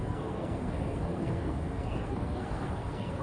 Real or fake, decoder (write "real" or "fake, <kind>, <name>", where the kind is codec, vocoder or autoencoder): fake, codec, SNAC